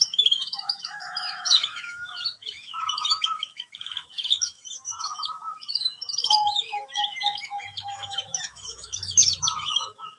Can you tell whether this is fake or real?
fake